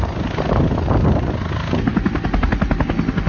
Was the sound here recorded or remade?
recorded